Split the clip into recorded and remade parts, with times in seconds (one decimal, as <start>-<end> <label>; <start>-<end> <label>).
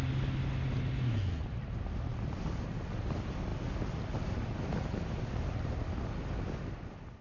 0.0-7.2 recorded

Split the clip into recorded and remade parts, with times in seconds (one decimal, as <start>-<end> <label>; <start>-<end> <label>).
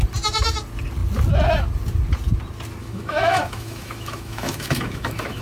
0.0-2.8 recorded; 2.8-5.4 remade